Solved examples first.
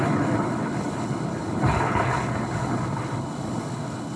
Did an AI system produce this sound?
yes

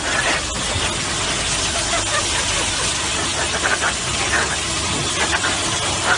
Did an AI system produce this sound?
no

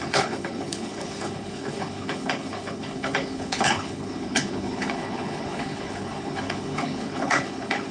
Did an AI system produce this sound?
yes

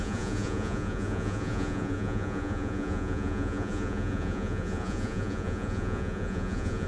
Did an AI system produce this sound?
yes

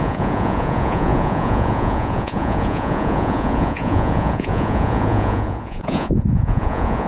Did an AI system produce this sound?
yes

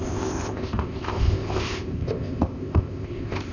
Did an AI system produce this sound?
yes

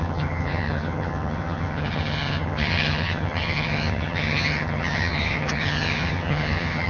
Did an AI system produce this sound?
yes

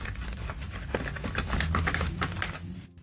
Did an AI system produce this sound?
no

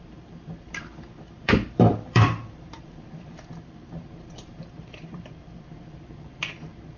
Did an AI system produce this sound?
yes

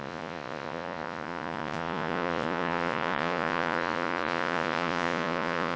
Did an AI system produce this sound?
yes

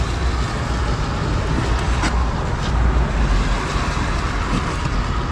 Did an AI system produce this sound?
no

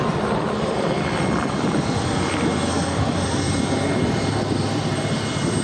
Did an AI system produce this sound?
yes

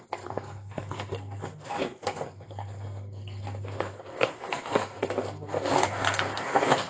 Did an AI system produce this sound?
yes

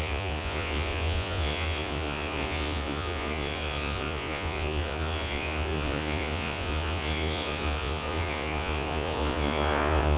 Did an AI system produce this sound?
yes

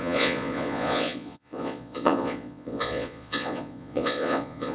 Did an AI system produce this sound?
yes